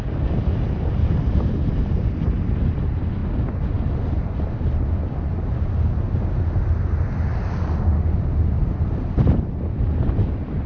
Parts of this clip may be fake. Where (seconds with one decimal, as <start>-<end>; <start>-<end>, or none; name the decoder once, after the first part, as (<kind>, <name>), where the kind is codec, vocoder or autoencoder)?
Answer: none